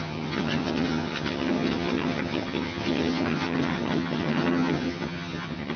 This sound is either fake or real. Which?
fake